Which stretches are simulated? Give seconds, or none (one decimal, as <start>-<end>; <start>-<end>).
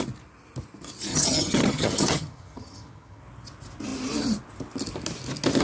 1.1-3.2